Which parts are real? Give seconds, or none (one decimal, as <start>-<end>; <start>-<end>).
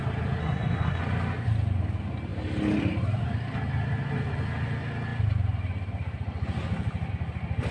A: 0.0-0.4; 1.0-7.7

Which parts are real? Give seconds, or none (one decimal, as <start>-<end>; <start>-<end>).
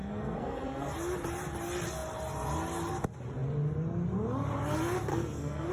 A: 0.9-5.1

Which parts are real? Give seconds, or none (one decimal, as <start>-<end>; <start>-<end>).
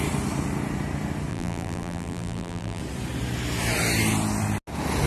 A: 0.0-1.3; 2.8-5.1